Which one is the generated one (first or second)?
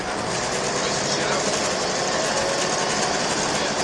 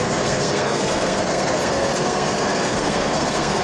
second